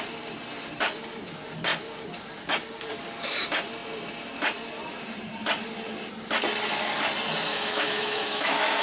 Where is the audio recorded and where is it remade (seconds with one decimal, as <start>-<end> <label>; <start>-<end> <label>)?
0.0-7.5 recorded; 7.5-8.8 remade